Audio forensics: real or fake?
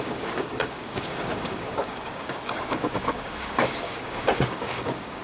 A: fake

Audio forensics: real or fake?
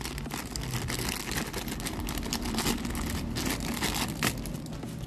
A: real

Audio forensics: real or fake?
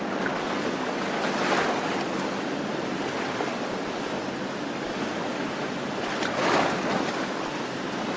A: fake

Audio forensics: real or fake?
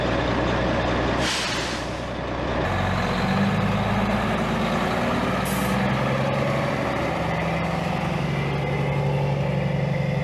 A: real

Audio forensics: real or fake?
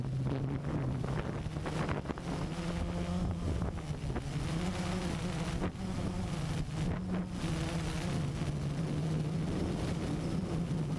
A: real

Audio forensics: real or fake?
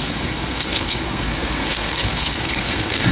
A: fake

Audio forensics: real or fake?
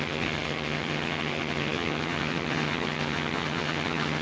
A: fake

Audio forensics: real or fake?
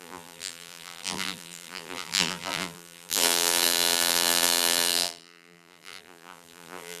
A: fake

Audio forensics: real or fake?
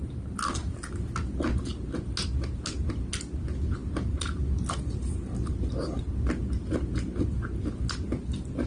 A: real